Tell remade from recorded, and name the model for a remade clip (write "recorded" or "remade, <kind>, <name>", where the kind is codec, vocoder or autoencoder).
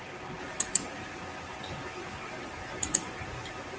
recorded